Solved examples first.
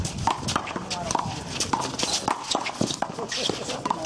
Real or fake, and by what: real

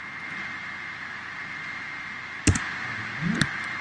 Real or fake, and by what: real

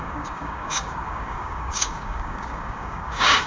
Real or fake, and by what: fake, codec, DAC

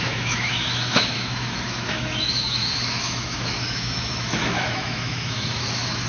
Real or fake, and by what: fake, autoencoder, DAC-VAE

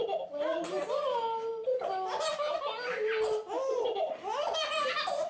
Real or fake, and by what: real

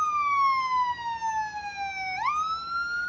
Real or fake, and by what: real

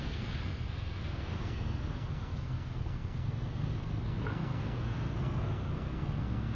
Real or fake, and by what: fake, codec, SNAC